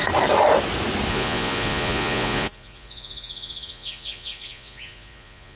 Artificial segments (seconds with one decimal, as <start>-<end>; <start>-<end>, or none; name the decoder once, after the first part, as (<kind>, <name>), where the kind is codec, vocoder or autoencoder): 1.1-5.6 (vocoder, Vocos)